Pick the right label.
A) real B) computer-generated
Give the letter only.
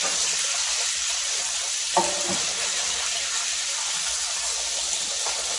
A